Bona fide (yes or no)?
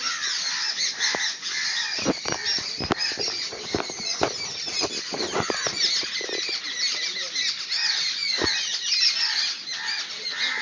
yes